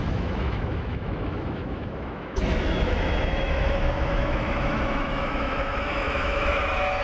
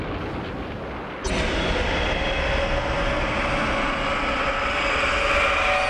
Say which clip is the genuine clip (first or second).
second